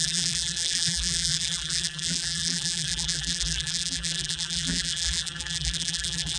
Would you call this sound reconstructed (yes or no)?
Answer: yes